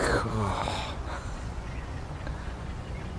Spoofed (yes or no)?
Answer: yes